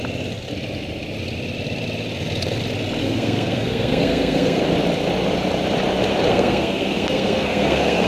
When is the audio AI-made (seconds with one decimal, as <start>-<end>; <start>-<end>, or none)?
3.0-4.6; 6.3-8.1